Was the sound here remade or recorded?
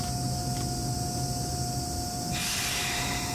recorded